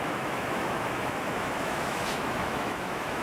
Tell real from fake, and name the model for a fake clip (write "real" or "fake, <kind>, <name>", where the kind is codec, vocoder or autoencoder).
fake, autoencoder, DAC-VAE